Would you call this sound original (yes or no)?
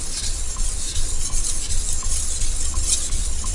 yes